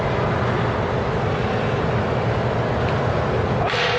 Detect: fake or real real